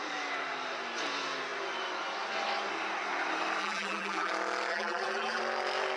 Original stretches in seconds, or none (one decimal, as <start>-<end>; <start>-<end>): 0.0-3.6; 4.3-4.7; 5.4-6.0